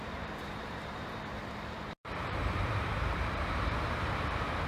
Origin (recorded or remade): remade